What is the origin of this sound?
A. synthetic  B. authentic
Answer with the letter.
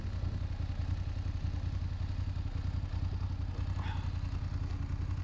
B